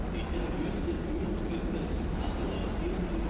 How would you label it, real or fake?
real